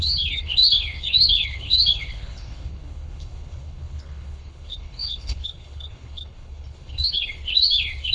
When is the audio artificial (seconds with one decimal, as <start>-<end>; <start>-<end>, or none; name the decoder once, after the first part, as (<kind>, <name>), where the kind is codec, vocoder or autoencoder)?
0.0-8.1 (codec, HILCodec)